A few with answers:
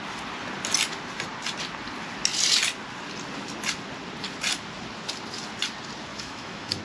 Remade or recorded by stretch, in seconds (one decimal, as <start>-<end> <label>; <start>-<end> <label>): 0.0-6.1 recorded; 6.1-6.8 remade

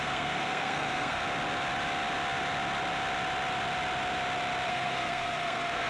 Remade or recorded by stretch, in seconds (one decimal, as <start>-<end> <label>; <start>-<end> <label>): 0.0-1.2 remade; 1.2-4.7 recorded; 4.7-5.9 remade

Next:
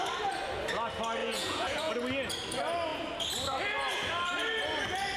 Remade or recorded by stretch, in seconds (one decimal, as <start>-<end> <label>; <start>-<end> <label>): 0.0-1.2 recorded; 1.2-1.9 remade; 1.9-5.2 recorded